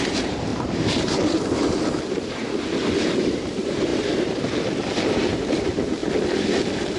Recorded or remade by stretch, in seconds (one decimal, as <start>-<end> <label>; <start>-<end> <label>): 0.0-6.0 remade; 6.0-6.6 recorded; 6.6-7.0 remade